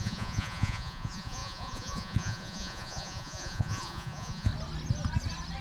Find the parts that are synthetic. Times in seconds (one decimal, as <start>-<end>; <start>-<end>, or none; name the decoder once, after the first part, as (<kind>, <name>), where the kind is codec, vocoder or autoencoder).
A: 0.0-4.5 (vocoder, Vocos)